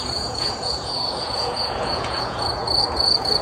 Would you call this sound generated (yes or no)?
yes